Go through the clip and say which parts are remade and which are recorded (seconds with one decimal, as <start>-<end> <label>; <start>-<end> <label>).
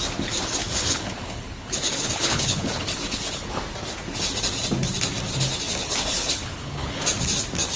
0.0-0.6 recorded; 0.6-3.6 remade; 3.6-5.8 recorded; 5.8-7.0 remade; 7.0-7.8 recorded